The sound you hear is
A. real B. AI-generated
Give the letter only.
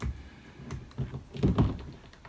A